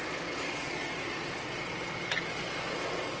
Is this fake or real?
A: real